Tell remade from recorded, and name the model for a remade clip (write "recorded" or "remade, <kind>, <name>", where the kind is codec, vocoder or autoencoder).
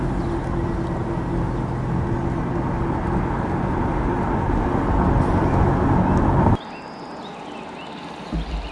recorded